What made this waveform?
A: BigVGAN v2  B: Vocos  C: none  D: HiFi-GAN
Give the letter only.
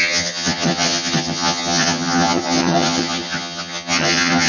D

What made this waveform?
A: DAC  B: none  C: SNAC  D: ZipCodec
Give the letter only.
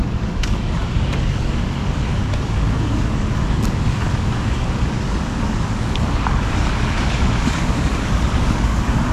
A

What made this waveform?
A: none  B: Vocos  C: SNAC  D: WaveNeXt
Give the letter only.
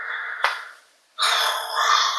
A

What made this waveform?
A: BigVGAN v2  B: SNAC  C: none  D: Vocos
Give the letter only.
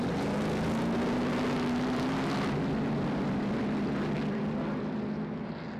C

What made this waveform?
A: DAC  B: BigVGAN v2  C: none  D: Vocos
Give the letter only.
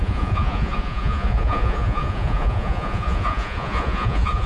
D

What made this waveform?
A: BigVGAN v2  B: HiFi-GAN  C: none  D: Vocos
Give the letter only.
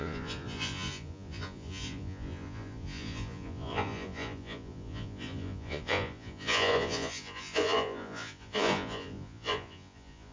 D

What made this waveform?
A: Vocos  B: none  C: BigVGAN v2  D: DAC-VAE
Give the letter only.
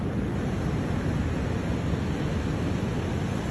B